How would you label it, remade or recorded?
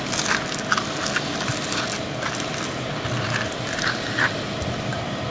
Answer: recorded